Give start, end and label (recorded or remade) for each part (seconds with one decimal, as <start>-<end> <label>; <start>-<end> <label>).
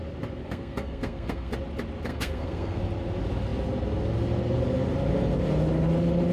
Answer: 0.0-0.4 recorded; 0.4-1.5 remade; 1.5-2.1 recorded; 2.1-2.8 remade; 2.8-6.3 recorded